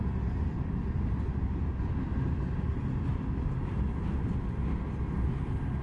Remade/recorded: recorded